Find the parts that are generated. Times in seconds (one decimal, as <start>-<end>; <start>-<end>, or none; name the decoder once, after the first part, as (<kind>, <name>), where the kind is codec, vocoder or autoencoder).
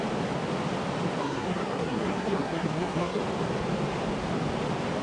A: 1.2-3.2 (codec, SNAC)